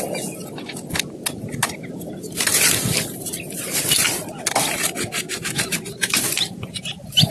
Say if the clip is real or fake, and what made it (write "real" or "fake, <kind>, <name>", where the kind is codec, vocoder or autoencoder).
real